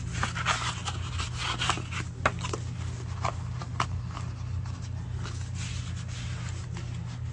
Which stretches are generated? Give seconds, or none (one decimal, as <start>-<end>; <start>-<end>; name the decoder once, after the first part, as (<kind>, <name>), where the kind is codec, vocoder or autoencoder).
none